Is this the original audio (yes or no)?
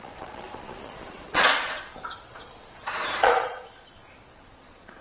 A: no